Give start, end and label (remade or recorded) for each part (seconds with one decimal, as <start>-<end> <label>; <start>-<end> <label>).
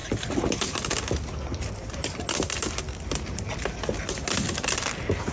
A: 0.0-5.3 recorded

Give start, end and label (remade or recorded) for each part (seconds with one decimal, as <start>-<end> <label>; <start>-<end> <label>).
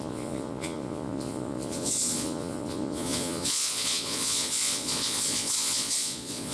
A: 0.0-6.5 remade